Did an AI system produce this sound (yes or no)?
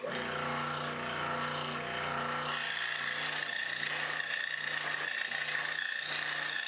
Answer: no